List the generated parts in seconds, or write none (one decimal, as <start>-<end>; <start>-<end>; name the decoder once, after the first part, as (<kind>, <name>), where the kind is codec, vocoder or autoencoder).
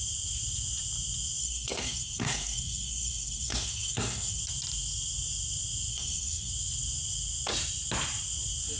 1.4-4.4 (codec, SNAC); 5.9-6.5